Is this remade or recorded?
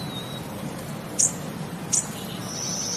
recorded